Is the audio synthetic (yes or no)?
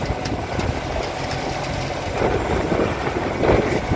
no